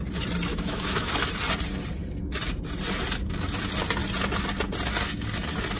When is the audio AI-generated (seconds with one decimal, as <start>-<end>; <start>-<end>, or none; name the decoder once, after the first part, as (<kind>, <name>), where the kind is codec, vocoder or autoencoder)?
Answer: 0.5-1.1 (autoencoder, DAC-VAE)

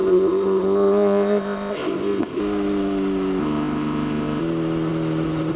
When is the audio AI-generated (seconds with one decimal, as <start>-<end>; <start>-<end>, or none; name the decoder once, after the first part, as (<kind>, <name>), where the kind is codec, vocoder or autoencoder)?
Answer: 0.0-2.4 (codec, ZipCodec); 3.4-4.4